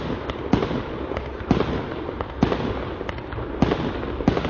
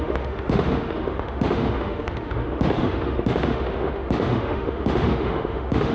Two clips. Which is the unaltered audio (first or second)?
first